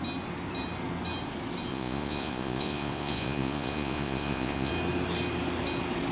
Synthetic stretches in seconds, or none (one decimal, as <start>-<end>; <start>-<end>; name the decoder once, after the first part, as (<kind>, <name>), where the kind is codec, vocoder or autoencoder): 1.7-4.7 (vocoder, Vocos)